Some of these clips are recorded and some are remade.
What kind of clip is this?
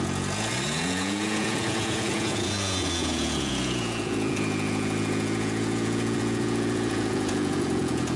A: remade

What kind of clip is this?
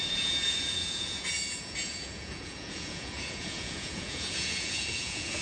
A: remade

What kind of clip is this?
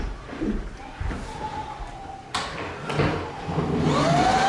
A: recorded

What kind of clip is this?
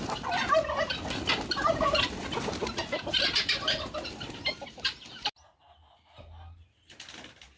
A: recorded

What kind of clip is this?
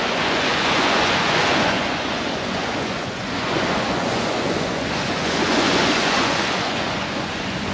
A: remade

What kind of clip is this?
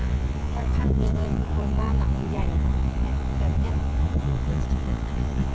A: remade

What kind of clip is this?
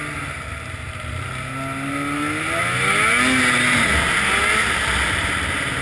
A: recorded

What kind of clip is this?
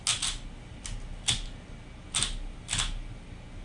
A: recorded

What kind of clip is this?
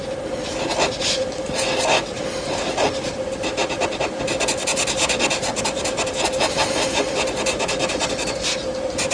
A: recorded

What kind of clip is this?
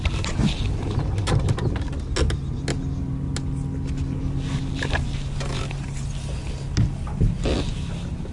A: recorded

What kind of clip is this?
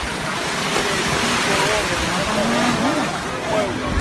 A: recorded